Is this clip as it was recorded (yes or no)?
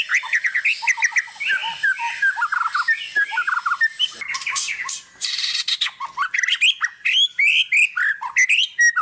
yes